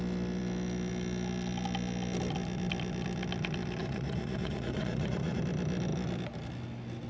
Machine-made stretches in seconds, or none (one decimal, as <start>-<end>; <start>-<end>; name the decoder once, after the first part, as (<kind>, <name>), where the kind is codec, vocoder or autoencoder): 3.8-5.4 (vocoder, Vocos)